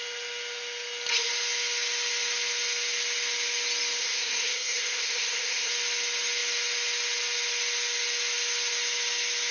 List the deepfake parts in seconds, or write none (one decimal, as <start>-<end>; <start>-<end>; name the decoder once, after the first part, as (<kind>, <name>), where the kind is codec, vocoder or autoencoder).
4.0-5.7 (codec, SNAC)